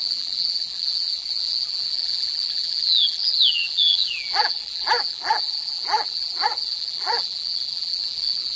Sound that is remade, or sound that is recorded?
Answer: remade